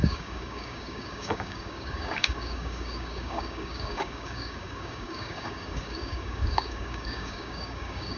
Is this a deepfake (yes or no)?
yes